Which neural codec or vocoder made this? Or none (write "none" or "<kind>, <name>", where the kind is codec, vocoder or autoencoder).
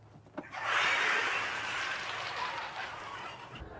none